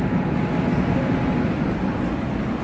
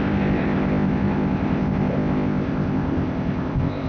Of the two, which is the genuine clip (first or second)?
first